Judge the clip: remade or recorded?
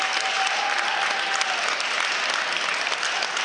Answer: recorded